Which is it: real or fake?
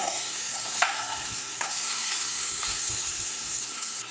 fake